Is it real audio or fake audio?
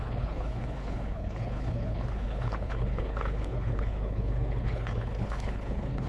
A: fake